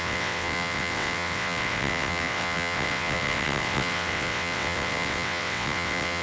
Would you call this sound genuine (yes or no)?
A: no